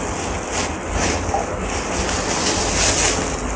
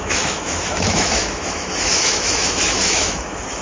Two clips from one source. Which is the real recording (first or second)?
first